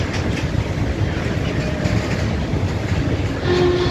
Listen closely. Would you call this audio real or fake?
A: real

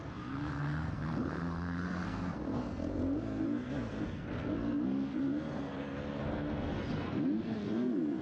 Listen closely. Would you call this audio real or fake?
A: fake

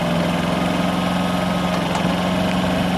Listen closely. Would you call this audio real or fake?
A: real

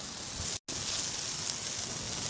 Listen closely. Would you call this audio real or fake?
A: real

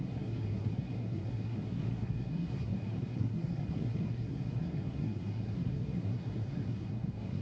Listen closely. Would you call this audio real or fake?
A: fake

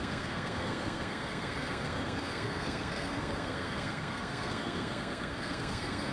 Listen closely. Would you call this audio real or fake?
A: fake